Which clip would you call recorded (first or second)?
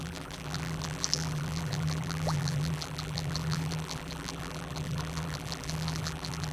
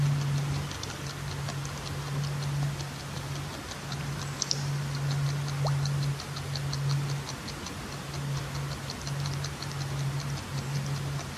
second